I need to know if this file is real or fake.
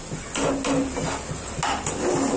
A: real